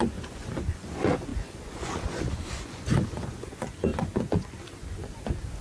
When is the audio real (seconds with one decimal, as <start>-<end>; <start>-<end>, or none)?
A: none

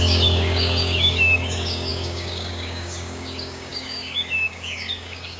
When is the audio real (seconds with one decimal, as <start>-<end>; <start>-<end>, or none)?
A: none

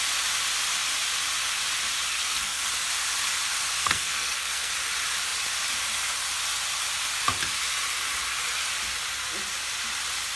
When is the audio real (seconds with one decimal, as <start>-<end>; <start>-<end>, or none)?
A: 0.0-2.1; 2.7-3.8; 4.7-10.4

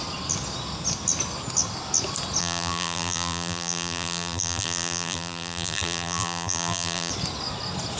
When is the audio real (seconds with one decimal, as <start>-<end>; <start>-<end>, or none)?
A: 0.0-2.4; 7.1-8.0

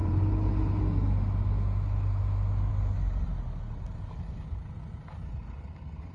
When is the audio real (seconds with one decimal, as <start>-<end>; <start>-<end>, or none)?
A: 0.0-6.1

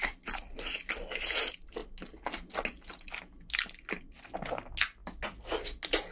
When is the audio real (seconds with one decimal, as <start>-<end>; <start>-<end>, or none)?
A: 0.0-6.1

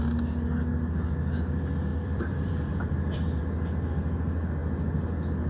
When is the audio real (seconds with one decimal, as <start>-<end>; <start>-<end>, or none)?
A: 0.0-1.9; 3.4-5.5